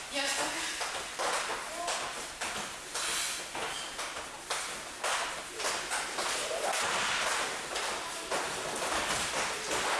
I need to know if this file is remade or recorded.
recorded